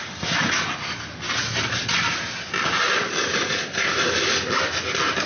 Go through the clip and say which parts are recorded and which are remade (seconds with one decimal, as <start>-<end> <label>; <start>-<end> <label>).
0.0-5.3 recorded